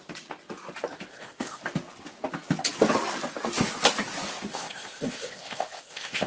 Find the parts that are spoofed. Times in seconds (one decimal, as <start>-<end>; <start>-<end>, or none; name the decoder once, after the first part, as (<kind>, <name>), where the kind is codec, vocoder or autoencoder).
1.1-1.6 (codec, ZipCodec); 4.5-6.3